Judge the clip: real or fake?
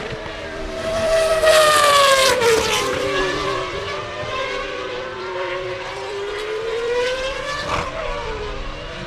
fake